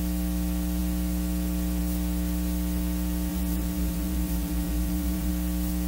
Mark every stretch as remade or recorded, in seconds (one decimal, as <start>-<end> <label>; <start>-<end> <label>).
0.0-3.3 recorded; 3.3-5.3 remade; 5.3-5.9 recorded